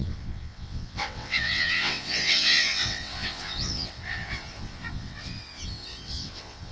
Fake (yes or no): yes